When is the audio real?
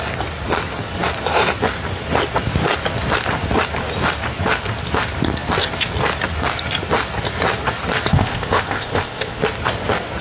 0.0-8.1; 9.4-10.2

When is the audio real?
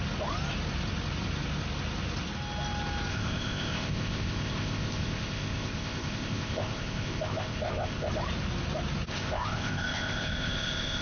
0.0-3.1; 8.1-9.1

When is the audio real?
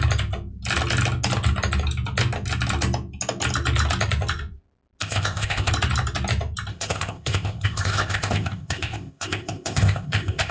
0.0-5.0; 5.7-6.7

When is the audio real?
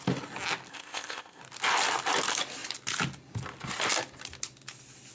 0.0-0.7; 1.4-5.1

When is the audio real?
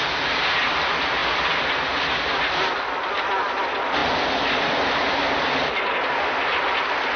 0.0-7.2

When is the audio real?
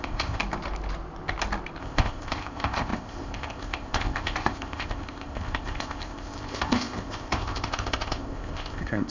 0.4-1.8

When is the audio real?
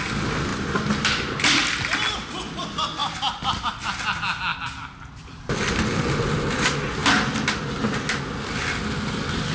0.0-9.5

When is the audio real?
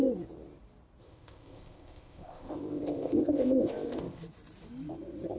0.0-1.0; 4.2-5.4